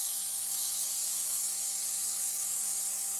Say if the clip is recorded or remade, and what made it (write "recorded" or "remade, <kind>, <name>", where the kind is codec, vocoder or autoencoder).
remade, codec, DAC